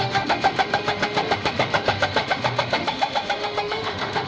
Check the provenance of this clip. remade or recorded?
remade